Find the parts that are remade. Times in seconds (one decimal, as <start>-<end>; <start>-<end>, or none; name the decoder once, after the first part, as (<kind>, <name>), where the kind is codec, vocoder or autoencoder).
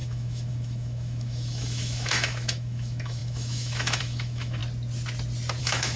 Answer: 0.0-4.6 (autoencoder, DAC-VAE); 5.6-6.0